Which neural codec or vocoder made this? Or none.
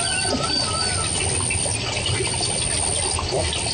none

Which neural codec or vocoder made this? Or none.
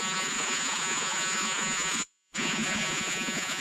vocoder, Vocos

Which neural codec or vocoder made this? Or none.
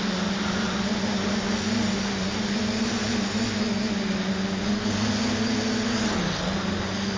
none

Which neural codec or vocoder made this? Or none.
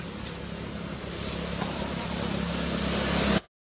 none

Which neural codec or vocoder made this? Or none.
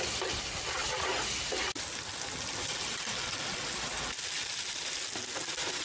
none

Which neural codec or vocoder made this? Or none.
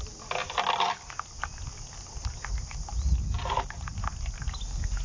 none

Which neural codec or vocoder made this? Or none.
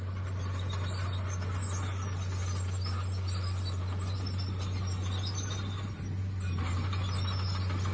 none